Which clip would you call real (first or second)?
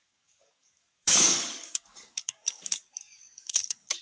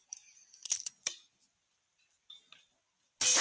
second